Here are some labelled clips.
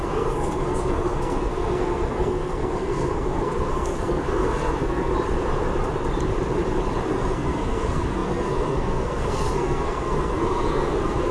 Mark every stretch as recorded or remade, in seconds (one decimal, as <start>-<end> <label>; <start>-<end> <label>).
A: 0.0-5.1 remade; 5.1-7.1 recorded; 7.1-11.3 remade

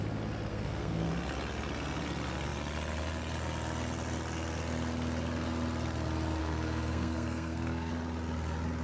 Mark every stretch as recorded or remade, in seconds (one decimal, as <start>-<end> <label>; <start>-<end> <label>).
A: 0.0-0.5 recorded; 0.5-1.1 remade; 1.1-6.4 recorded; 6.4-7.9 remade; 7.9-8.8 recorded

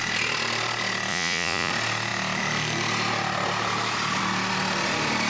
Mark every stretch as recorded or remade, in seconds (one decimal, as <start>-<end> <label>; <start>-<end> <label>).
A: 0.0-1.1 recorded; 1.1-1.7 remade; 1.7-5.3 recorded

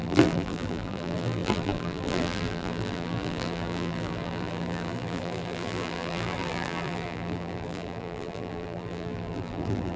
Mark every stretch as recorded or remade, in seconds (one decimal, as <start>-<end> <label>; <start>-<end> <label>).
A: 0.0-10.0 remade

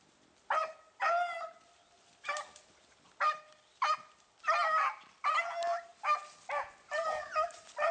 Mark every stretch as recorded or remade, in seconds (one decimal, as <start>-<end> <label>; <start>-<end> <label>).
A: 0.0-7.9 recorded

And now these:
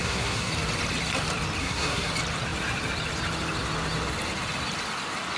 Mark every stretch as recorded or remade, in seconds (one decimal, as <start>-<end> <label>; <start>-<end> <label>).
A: 0.0-0.5 remade; 0.5-1.6 recorded; 1.6-2.1 remade; 2.1-5.4 recorded

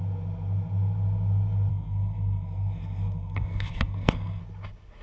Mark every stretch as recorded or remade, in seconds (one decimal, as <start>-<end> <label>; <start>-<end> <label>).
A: 0.0-1.7 recorded; 1.7-4.4 remade; 4.4-5.0 recorded